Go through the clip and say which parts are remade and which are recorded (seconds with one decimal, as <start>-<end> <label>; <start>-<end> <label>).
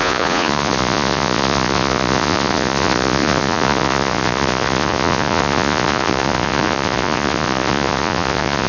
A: 0.0-8.7 remade